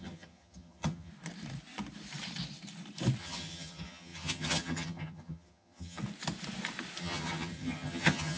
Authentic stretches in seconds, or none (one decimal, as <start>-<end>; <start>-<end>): 1.1-3.2; 6.0-7.0